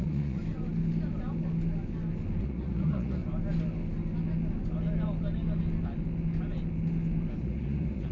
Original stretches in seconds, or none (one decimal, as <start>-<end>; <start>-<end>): 0.4-2.4; 3.2-7.4